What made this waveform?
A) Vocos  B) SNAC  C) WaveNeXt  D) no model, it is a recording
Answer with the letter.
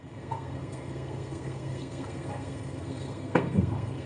B